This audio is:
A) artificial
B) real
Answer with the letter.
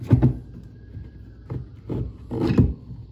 B